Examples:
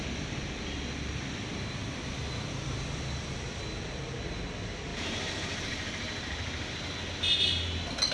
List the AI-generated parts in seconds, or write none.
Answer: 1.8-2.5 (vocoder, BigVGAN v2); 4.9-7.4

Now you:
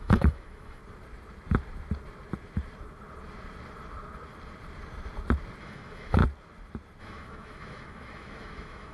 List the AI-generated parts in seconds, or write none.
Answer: 0.0-0.8 (autoencoder, DAC-VAE); 5.6-6.2; 7.0-8.9

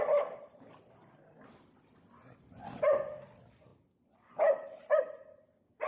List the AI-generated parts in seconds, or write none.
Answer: none

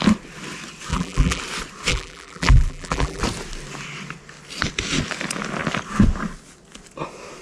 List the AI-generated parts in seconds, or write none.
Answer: 0.9-1.4 (vocoder, BigVGAN v2); 1.9-3.2

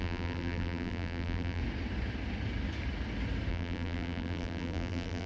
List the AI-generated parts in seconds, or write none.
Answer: 0.0-1.6 (vocoder, BigVGAN v2); 3.5-5.3